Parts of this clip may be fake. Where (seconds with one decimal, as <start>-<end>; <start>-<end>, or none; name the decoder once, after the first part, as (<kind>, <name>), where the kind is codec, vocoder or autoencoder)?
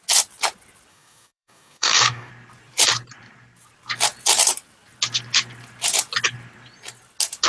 0.9-2.3 (codec, DAC)